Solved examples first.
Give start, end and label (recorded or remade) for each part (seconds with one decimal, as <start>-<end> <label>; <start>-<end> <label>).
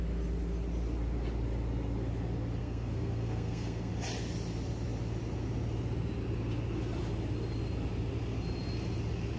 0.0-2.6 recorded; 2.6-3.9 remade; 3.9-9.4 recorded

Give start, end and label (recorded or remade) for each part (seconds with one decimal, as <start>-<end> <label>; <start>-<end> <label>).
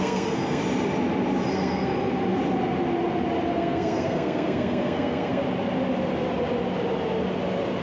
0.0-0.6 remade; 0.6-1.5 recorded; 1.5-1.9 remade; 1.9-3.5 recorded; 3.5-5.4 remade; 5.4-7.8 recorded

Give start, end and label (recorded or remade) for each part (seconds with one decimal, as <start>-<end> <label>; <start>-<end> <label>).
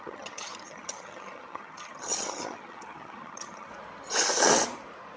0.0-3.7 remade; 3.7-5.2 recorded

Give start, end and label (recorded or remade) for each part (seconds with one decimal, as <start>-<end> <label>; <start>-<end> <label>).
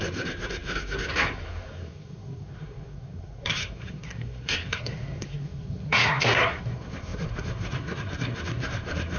0.0-9.2 remade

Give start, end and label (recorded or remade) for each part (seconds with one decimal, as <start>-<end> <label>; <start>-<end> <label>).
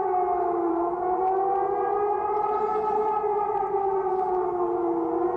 0.0-5.4 recorded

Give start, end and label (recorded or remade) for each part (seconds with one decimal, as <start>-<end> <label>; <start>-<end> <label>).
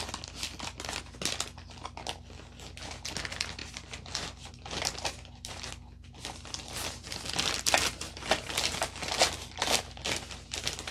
0.0-10.9 recorded